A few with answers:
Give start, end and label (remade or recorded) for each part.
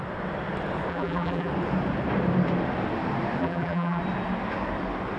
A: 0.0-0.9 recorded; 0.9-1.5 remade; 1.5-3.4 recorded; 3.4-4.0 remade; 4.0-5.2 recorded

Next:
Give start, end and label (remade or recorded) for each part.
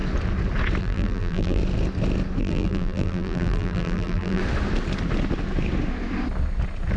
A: 0.0-0.8 recorded; 0.8-1.6 remade; 1.6-2.4 recorded; 2.4-4.4 remade; 4.4-7.0 recorded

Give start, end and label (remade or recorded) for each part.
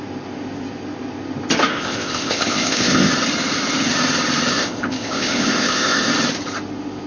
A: 0.0-1.7 recorded; 1.7-3.1 remade; 3.1-4.5 recorded; 4.5-6.1 remade; 6.1-7.1 recorded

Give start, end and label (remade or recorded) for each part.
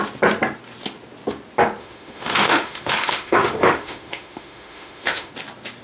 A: 0.0-1.8 recorded; 1.8-5.3 remade; 5.3-5.8 recorded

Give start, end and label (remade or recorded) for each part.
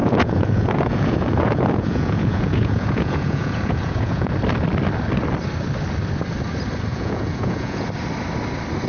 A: 0.0-4.3 remade; 4.3-6.9 recorded; 6.9-7.9 remade; 7.9-8.9 recorded